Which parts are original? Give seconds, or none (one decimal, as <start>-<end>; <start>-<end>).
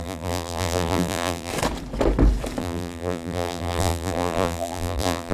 1.5-2.6